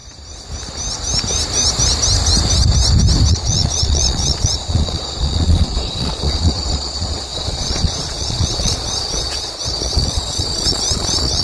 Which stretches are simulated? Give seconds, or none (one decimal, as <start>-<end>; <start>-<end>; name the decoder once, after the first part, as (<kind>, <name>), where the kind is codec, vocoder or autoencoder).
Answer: 3.3-11.4 (vocoder, Vocos)